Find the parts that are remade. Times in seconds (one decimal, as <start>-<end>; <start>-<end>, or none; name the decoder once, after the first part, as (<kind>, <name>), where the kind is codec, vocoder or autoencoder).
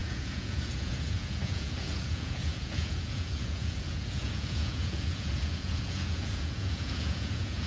0.0-7.7 (vocoder, Vocos)